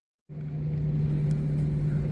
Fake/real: real